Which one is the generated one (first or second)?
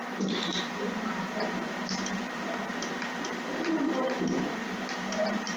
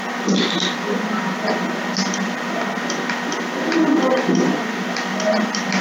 first